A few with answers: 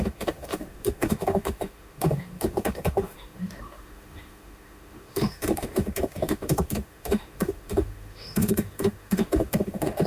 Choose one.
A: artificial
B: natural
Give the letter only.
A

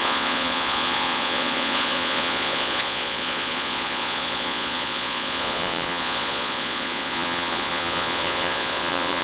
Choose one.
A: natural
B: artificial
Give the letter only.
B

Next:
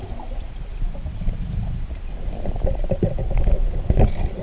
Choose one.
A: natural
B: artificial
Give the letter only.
A